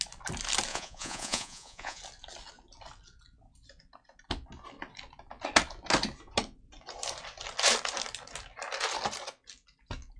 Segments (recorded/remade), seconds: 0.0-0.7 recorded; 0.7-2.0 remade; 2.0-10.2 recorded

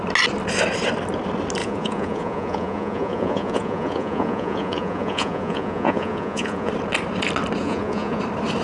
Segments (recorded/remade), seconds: 0.0-1.6 recorded; 1.6-6.7 remade; 6.7-7.6 recorded; 7.6-8.2 remade; 8.2-8.6 recorded

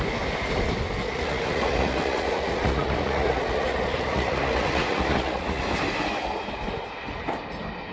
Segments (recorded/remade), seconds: 0.0-1.0 recorded; 1.0-5.6 remade; 5.6-7.9 recorded